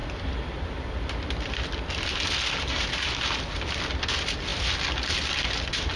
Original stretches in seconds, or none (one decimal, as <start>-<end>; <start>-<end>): 0.0-6.0